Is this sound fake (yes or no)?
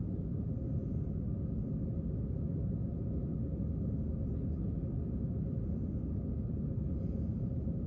no